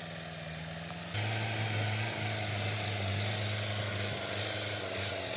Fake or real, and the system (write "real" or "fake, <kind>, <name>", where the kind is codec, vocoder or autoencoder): real